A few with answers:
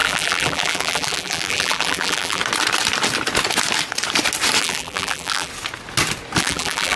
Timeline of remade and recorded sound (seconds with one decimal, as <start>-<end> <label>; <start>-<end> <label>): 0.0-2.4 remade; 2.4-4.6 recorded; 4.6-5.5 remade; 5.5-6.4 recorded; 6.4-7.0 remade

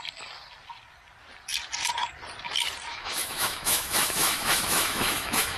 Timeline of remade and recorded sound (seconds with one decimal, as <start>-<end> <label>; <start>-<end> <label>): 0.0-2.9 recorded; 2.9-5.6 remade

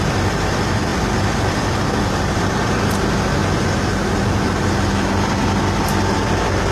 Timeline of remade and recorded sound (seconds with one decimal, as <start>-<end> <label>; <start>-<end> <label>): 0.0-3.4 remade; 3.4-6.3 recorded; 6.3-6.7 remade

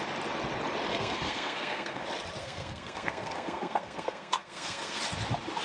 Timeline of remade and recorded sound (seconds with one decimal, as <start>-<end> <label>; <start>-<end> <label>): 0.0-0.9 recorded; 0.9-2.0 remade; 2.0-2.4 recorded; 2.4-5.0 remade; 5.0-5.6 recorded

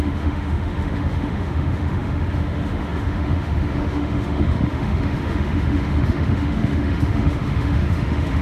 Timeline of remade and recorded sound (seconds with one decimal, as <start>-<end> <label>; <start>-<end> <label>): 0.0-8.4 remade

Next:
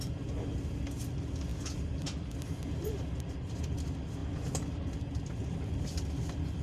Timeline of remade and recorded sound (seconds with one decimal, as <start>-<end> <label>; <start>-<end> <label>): 0.0-6.6 recorded

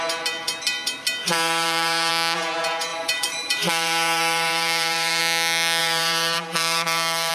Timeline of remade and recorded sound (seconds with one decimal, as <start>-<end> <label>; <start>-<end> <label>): 0.0-1.2 recorded; 1.2-2.1 remade; 2.1-2.9 recorded; 2.9-5.2 remade; 5.2-5.8 recorded; 5.8-7.3 remade

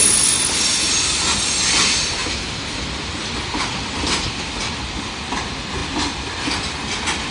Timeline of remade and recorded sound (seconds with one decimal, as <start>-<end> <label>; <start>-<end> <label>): 0.0-7.3 recorded